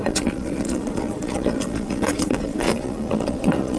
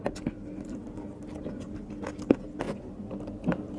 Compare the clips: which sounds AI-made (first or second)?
first